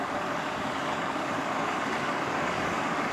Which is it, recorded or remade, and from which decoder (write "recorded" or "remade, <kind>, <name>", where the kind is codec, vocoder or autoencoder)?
remade, codec, DAC